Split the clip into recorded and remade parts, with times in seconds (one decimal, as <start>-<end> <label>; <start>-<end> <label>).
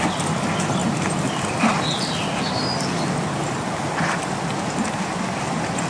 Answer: 0.0-0.8 recorded; 0.8-4.3 remade; 4.3-5.9 recorded